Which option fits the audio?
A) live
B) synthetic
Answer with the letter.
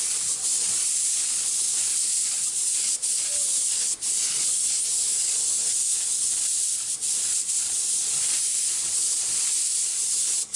A